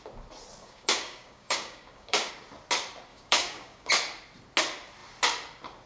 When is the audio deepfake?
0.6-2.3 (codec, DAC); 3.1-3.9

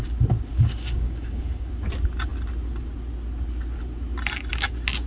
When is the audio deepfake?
0.5-1.7 (codec, DAC)

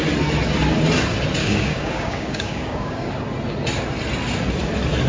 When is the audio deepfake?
1.4-3.1 (codec, DAC)